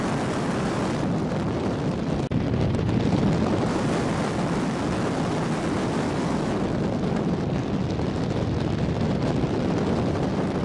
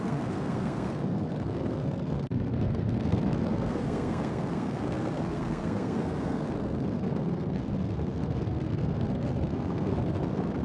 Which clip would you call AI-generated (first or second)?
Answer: second